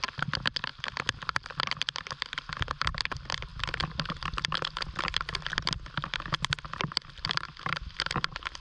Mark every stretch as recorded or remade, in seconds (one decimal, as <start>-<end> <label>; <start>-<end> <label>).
0.0-8.6 recorded